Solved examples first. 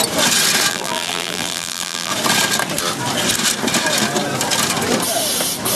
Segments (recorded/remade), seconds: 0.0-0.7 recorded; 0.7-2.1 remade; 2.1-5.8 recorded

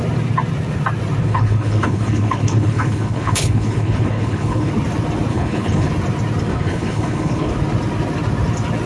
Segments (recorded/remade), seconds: 0.0-1.2 recorded; 1.2-4.7 remade; 4.7-5.3 recorded; 5.3-5.9 remade; 5.9-6.5 recorded; 6.5-7.5 remade; 7.5-8.9 recorded